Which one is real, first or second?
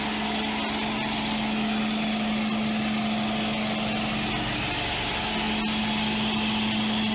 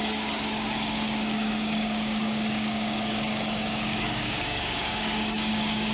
first